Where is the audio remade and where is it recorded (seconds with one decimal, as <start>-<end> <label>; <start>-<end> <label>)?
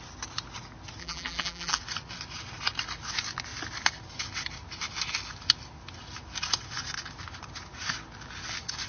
0.0-1.0 recorded; 1.0-1.8 remade; 1.8-8.9 recorded